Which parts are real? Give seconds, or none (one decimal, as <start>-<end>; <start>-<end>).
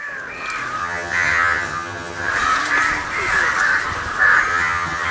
0.0-0.8; 2.3-4.5